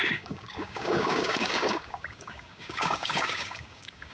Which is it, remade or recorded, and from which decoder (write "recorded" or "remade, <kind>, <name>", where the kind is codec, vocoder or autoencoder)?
remade, codec, DAC